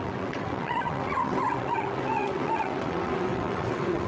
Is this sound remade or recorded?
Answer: remade